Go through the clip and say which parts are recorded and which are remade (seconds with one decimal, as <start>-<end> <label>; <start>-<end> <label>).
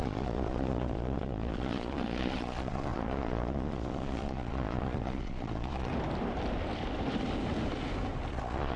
0.0-5.9 remade; 5.9-8.3 recorded; 8.3-8.8 remade